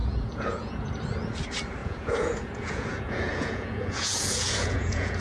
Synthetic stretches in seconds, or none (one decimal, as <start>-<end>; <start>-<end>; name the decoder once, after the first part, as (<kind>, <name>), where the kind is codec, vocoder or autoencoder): 0.0-0.9 (vocoder, Vocos); 1.8-5.2